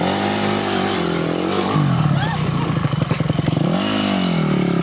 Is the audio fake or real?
real